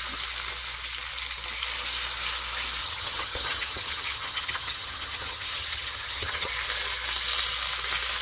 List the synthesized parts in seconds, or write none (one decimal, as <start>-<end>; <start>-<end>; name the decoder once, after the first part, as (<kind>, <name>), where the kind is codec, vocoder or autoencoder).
2.8-6.5 (vocoder, HiFi-GAN)